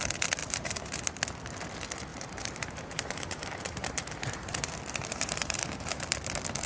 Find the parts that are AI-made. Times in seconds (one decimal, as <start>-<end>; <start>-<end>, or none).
0.4-1.2; 2.1-6.1